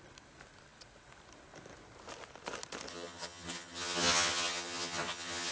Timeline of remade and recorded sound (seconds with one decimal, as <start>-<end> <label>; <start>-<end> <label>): 0.0-2.9 recorded; 2.9-5.5 remade